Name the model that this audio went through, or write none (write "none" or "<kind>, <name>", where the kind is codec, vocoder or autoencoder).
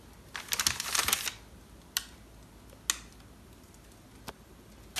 none